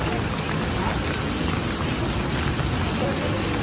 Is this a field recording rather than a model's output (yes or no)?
yes